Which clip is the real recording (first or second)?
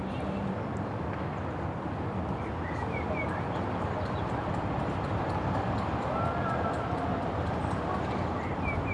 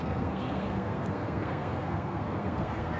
first